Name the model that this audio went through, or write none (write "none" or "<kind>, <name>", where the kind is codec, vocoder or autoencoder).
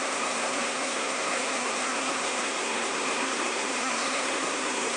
codec, SNAC